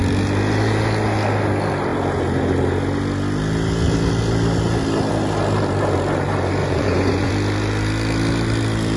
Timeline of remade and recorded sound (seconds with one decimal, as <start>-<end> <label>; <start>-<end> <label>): 0.0-6.6 recorded; 6.6-7.3 remade; 7.3-9.0 recorded

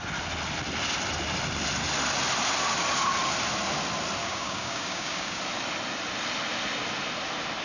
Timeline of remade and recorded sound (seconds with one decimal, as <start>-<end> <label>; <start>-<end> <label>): 0.0-4.2 recorded; 4.2-5.4 remade; 5.4-7.6 recorded